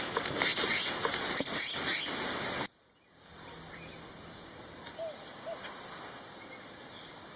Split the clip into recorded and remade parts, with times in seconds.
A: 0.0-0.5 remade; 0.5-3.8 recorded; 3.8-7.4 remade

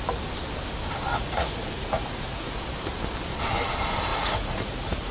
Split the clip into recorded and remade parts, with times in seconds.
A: 0.0-1.1 recorded; 1.1-2.6 remade; 2.6-4.1 recorded; 4.1-5.1 remade

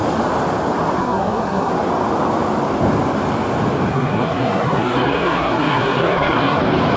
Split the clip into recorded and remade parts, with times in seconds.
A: 0.0-1.0 recorded; 1.0-1.7 remade; 1.7-3.9 recorded; 3.9-6.6 remade; 6.6-7.0 recorded

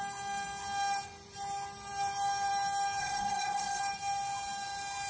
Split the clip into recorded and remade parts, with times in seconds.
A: 0.0-3.0 recorded; 3.0-3.8 remade; 3.8-5.1 recorded

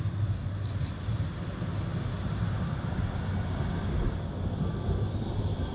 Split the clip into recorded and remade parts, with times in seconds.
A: 0.0-5.7 recorded

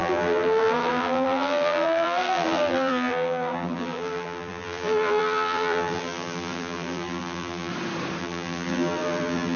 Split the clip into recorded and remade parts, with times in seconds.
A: 0.0-7.7 remade; 7.7-8.2 recorded; 8.2-9.6 remade

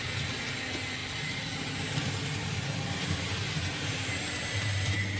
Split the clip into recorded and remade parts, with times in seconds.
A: 0.0-1.0 recorded; 1.0-4.1 remade; 4.1-5.2 recorded